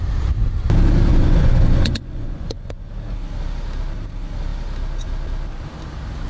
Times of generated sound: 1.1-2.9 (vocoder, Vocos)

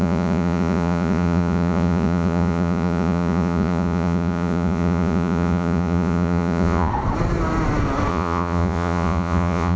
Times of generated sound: 0.0-6.9 (vocoder, Vocos); 8.1-9.8

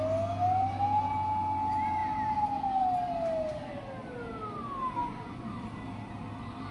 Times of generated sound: 5.0-5.5 (vocoder, Vocos)

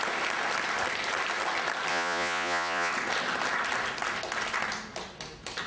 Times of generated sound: 1.9-2.9 (vocoder, Vocos)

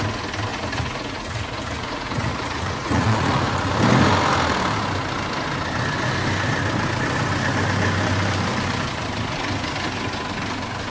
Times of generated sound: 0.5-3.7 (vocoder, Vocos)

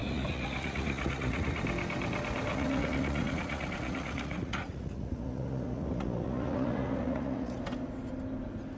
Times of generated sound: 0.0-1.6 (vocoder, Vocos); 2.5-7.6